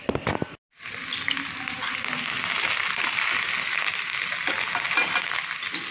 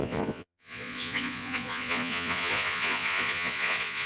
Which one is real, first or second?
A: first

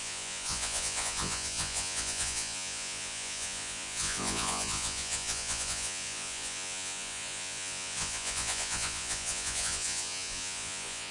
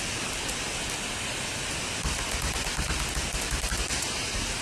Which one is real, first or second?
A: second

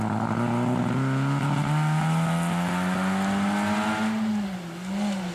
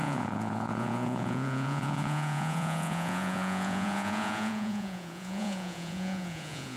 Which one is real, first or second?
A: first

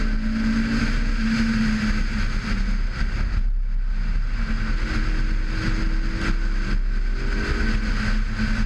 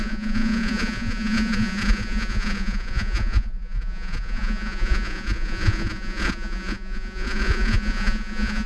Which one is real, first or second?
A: first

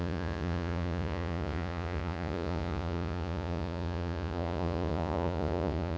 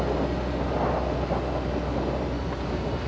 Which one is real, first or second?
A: second